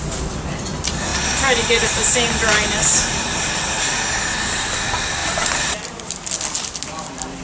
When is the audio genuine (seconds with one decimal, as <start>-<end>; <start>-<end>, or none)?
0.0-5.2; 6.3-7.4